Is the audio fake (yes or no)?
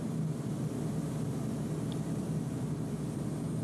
no